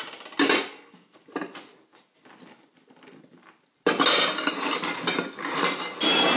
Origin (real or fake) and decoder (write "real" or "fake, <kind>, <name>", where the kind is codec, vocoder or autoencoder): real